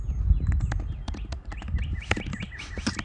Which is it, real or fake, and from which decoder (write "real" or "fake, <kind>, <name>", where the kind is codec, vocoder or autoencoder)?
real